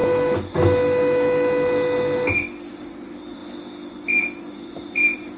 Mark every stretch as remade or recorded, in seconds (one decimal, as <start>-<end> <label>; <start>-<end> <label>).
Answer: 0.0-2.8 recorded; 2.8-3.4 remade; 3.4-3.9 recorded; 3.9-5.4 remade